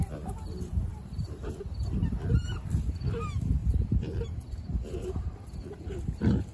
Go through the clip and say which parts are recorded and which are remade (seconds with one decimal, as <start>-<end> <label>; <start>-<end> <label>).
0.0-0.9 recorded; 0.9-1.5 remade; 1.5-3.6 recorded; 3.6-6.5 remade

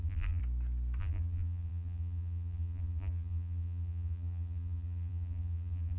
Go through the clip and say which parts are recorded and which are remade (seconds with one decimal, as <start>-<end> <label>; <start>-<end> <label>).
0.0-0.4 remade; 0.4-1.0 recorded; 1.0-6.0 remade

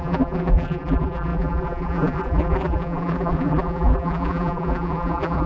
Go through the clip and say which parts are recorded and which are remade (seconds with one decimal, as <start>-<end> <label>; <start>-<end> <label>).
0.0-5.5 remade

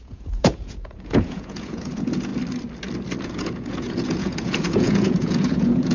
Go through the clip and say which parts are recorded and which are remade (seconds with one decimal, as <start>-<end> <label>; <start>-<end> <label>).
0.0-2.3 remade; 2.3-3.2 recorded; 3.2-5.9 remade

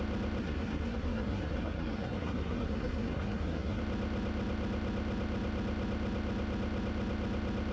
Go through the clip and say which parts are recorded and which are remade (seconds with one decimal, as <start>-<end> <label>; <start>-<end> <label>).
0.0-0.4 recorded; 0.4-3.8 remade; 3.8-7.7 recorded